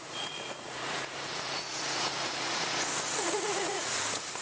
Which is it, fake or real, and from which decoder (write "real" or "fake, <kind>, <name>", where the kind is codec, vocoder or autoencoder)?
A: fake, vocoder, Vocos